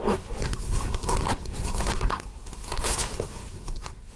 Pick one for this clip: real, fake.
fake